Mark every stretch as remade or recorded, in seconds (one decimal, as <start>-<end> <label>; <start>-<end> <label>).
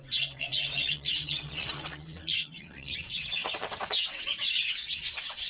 0.0-5.5 remade